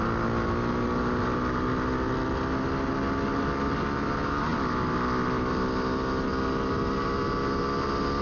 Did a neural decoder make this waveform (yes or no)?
no